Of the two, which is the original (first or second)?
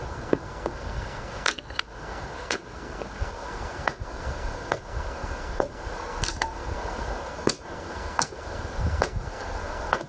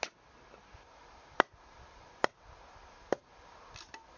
second